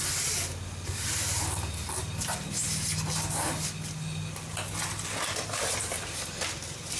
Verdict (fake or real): real